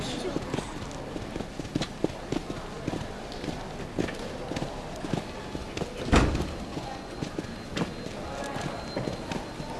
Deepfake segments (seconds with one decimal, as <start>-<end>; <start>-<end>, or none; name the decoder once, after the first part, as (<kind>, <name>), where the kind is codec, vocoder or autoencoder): 6.7-7.3 (vocoder, Vocos)